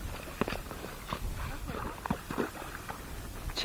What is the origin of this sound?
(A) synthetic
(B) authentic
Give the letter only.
B